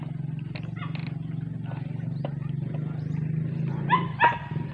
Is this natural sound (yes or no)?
yes